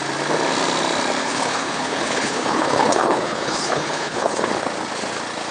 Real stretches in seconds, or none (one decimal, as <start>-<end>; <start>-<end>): 0.0-1.2; 4.5-5.5